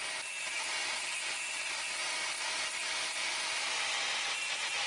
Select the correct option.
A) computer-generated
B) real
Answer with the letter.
B